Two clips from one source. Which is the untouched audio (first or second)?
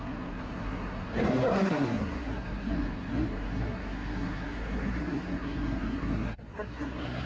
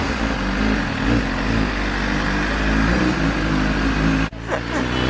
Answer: second